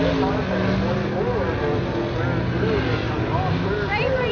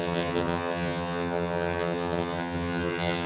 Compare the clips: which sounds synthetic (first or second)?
second